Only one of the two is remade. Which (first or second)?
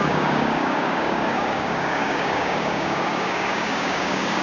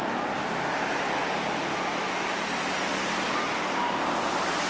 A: first